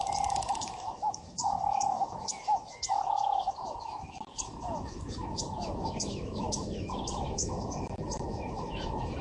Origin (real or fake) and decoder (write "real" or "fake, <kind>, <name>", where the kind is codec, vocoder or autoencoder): fake, autoencoder, DAC-VAE